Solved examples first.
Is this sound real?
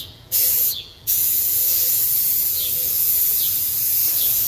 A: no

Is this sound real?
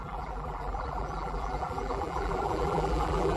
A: no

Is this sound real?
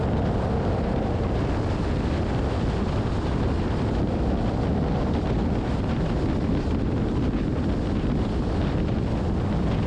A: yes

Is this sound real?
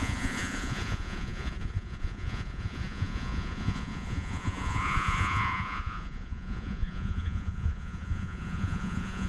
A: no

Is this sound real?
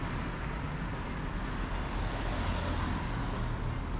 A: yes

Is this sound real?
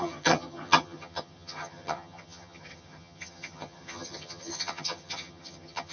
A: no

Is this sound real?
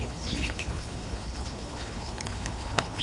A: no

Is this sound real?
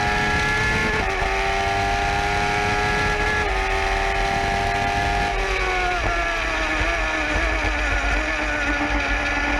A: yes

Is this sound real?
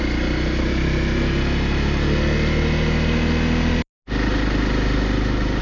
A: yes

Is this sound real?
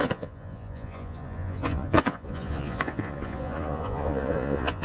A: no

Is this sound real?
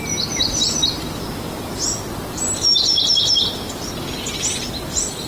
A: yes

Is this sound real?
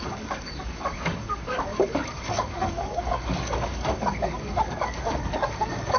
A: no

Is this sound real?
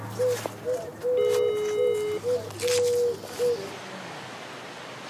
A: yes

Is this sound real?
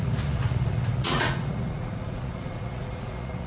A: no